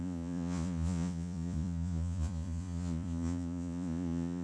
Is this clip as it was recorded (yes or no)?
no